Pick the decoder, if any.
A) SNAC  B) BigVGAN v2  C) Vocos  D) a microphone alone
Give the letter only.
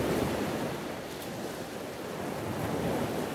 D